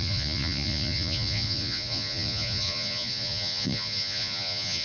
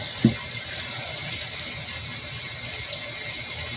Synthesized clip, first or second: first